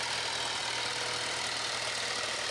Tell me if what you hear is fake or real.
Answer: real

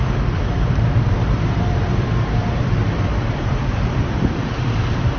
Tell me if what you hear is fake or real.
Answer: fake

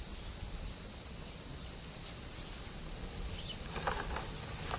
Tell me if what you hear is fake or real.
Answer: real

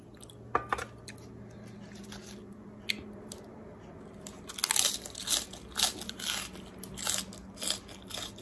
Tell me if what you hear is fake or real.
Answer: real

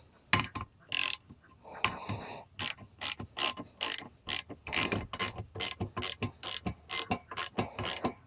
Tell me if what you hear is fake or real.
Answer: real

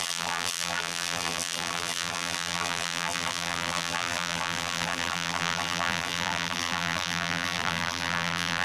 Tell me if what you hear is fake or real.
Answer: fake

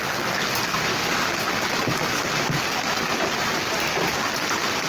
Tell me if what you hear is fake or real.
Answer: real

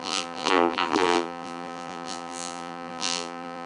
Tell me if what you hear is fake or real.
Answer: fake